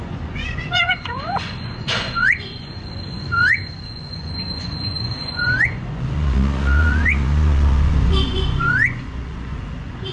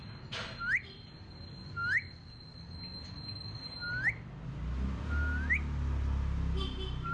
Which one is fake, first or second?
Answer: first